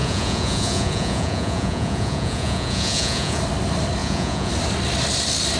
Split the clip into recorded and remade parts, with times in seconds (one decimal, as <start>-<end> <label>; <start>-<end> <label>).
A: 0.0-3.4 remade; 3.4-4.0 recorded; 4.0-4.5 remade; 4.5-5.6 recorded